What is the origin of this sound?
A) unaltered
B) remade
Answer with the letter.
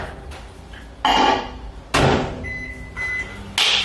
A